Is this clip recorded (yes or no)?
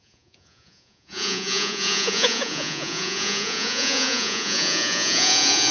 no